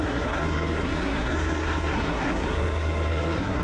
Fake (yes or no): yes